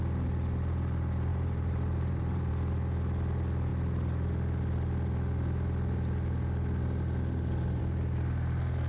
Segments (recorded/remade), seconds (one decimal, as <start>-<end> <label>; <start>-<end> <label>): 0.0-1.3 recorded; 1.3-2.5 remade; 2.5-8.9 recorded